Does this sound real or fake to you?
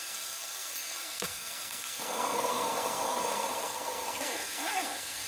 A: fake